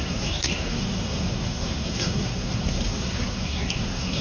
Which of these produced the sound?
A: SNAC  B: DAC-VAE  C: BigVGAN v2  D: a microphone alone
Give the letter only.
A